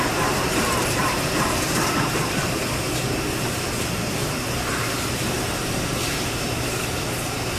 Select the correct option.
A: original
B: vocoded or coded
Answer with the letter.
B